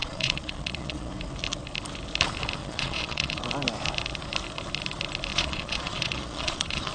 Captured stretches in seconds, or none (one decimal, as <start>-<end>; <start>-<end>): 1.1-2.6; 3.4-5.3